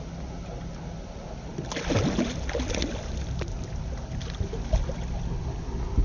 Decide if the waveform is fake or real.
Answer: real